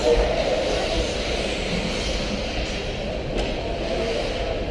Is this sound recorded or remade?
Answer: recorded